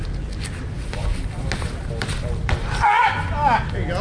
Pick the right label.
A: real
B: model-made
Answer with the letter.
A